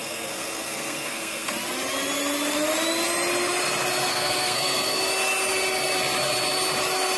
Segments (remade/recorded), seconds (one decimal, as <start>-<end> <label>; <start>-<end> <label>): 0.0-1.5 remade; 1.5-4.1 recorded; 4.1-5.1 remade; 5.1-7.2 recorded